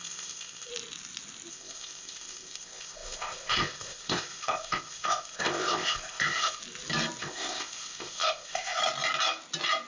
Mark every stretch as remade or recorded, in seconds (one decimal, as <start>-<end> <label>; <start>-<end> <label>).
0.0-0.7 remade; 0.7-1.5 recorded; 1.5-6.6 remade; 6.6-7.2 recorded; 7.2-8.8 remade; 8.8-9.9 recorded